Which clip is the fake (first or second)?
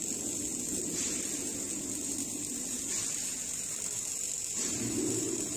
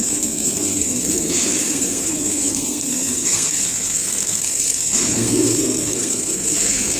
second